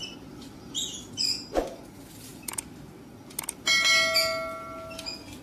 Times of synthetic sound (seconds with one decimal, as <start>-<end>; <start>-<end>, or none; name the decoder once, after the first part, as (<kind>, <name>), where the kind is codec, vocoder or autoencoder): 2.3-3.0 (vocoder, BigVGAN v2)